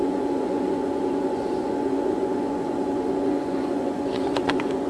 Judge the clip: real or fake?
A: fake